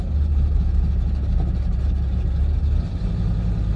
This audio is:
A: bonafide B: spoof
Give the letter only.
A